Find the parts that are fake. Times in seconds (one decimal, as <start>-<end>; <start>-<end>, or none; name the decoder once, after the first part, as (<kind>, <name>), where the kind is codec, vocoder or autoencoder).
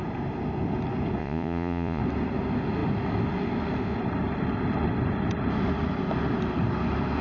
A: 1.2-2.0 (vocoder, Vocos)